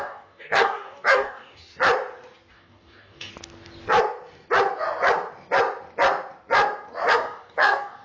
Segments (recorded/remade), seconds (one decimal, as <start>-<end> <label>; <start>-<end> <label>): 0.0-1.6 remade; 1.6-2.5 recorded; 2.5-3.3 remade; 3.3-7.1 recorded; 7.1-8.0 remade